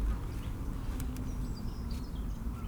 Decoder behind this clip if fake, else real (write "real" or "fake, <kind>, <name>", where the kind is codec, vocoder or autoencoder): real